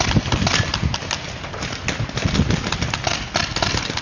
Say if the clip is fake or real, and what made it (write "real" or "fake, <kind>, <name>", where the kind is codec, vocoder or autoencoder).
real